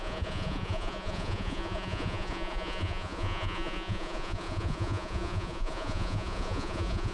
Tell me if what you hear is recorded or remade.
remade